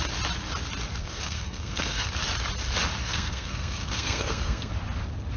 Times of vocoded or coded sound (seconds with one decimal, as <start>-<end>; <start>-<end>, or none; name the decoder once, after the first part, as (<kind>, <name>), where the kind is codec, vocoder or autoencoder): 1.0-2.1 (codec, SNAC); 3.0-4.7